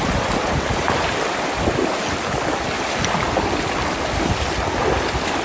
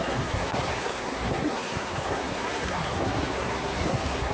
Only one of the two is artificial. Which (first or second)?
second